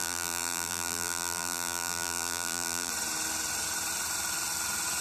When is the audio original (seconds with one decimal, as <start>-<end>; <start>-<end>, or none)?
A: 2.9-5.0